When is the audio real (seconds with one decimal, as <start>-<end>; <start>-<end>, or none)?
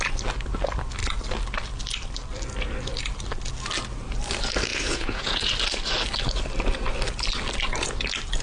0.0-4.7; 5.5-8.4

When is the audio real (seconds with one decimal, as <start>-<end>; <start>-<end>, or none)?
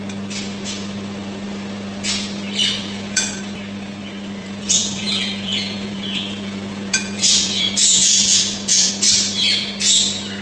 0.0-2.8; 3.4-4.4; 8.9-10.4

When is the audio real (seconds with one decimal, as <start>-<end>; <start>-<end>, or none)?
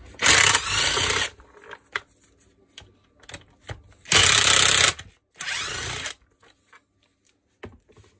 0.0-8.2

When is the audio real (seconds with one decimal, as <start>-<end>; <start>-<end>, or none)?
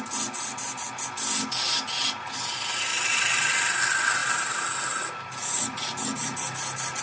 0.0-2.9; 3.8-7.0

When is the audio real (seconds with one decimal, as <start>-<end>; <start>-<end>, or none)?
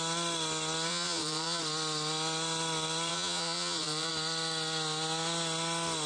0.0-0.9; 1.6-3.1; 4.1-6.1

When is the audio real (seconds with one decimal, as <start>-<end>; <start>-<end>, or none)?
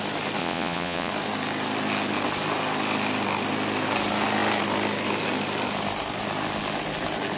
0.0-0.4; 1.1-7.4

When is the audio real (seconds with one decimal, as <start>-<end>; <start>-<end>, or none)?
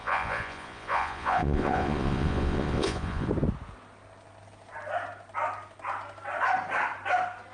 3.3-7.5